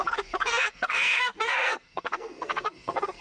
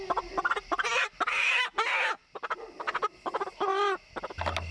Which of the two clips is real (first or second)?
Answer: second